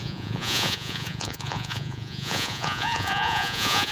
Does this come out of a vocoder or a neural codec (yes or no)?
yes